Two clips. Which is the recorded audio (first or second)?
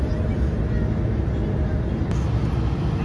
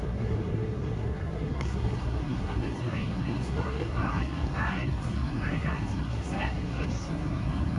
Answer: first